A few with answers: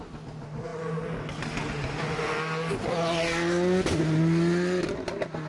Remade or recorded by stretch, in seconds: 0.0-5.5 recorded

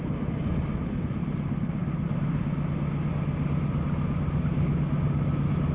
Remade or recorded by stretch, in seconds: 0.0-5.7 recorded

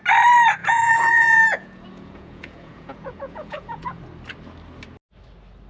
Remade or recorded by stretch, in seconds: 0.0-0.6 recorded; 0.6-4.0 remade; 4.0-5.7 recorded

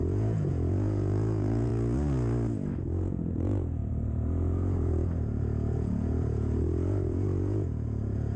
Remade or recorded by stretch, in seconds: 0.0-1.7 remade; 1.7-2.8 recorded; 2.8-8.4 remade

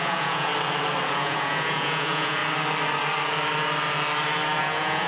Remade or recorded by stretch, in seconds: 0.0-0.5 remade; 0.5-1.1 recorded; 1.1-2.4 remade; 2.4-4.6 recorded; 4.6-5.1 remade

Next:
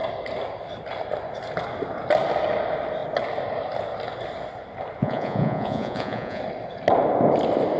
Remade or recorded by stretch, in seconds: 0.0-5.0 recorded; 5.0-6.4 remade; 6.4-7.8 recorded

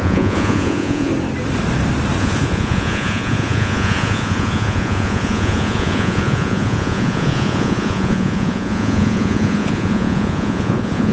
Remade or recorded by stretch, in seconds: 0.0-1.1 remade; 1.1-2.2 recorded; 2.2-11.1 remade